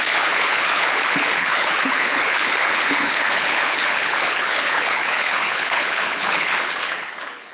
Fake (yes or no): yes